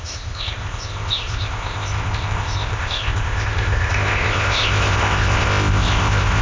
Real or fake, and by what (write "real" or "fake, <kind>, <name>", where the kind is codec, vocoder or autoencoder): fake, codec, ZipCodec